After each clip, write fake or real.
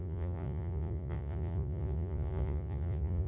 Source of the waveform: fake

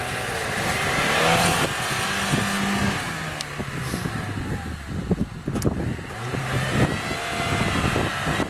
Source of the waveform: real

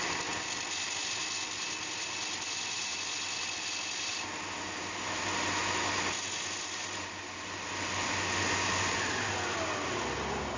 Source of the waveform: real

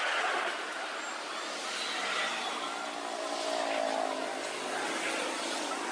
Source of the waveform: real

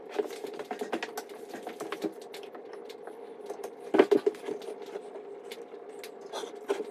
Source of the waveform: real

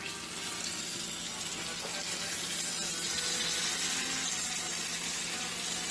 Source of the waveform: real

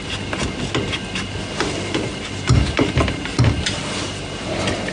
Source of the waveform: real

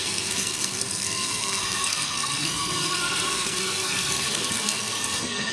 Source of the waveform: fake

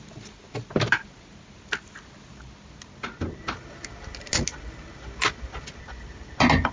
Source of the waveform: real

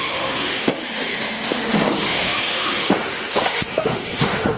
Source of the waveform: fake